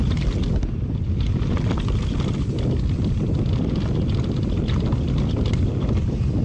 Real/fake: real